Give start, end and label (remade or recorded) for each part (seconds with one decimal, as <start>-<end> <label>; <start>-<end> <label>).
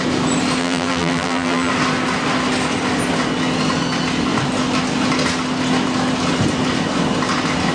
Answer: 0.0-0.6 recorded; 0.6-1.7 remade; 1.7-7.7 recorded